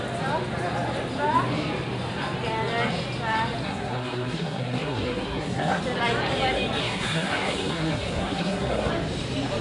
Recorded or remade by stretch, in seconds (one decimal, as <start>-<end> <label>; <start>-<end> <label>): 0.0-3.6 recorded; 3.6-5.8 remade; 5.8-6.8 recorded; 6.8-8.9 remade; 8.9-9.6 recorded